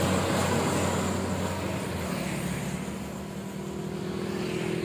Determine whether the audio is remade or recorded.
recorded